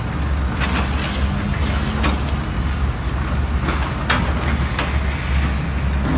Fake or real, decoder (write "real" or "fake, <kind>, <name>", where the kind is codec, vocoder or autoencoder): real